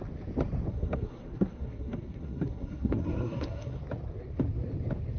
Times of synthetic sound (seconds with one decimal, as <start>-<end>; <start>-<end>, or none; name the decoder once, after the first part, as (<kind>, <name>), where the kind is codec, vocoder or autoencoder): 0.7-3.8 (codec, SNAC)